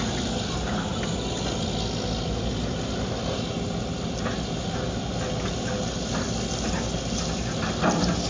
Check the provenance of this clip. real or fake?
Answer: real